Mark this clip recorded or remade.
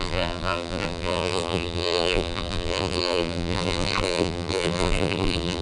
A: remade